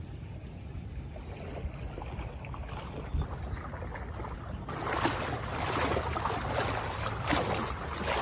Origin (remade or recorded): recorded